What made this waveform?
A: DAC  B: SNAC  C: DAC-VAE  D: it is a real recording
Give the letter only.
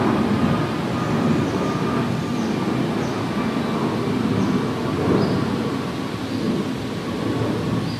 D